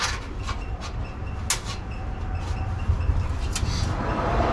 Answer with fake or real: real